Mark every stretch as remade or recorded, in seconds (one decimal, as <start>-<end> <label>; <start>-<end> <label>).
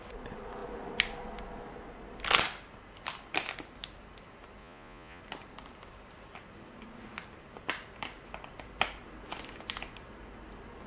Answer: 0.0-4.6 recorded; 4.6-5.2 remade; 5.2-10.9 recorded